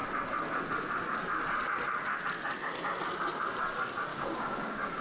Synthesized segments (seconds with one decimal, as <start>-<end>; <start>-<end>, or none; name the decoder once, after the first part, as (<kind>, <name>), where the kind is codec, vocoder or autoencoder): 4.1-5.0 (codec, DAC)